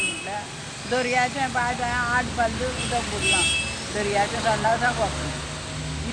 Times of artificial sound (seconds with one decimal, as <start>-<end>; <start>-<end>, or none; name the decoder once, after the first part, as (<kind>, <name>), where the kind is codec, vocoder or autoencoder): none